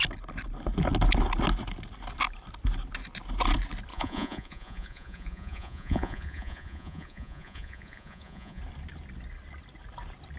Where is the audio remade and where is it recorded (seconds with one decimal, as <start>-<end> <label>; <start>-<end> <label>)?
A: 0.0-3.9 recorded; 3.9-8.6 remade; 8.6-10.4 recorded